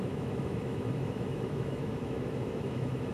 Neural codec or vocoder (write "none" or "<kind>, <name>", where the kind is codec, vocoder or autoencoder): autoencoder, DAC-VAE